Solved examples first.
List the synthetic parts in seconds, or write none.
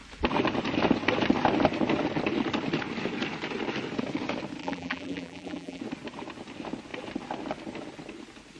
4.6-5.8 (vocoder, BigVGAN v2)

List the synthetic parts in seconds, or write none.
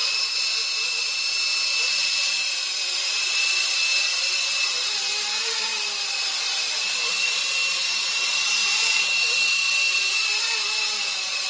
0.0-1.4 (vocoder, BigVGAN v2)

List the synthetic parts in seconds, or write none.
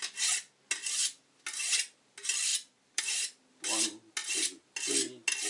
2.5-3.0 (vocoder, BigVGAN v2)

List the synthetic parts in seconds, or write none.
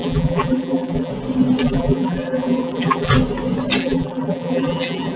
0.0-1.1 (vocoder, BigVGAN v2); 1.6-3.1; 3.8-5.2